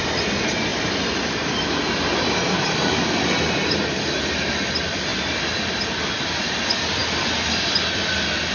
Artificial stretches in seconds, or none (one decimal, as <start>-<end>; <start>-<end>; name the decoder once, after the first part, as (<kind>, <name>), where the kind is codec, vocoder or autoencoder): none